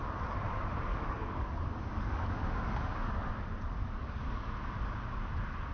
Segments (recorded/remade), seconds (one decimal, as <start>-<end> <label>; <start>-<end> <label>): 0.0-0.9 recorded; 0.9-3.3 remade; 3.3-3.8 recorded; 3.8-4.5 remade; 4.5-5.7 recorded